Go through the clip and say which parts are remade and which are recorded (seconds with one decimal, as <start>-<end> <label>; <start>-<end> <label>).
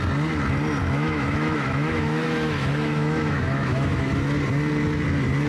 0.0-0.8 recorded; 0.8-4.1 remade; 4.1-5.5 recorded